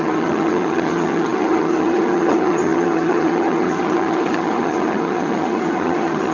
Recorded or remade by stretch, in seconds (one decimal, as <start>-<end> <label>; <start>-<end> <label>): 0.0-6.3 remade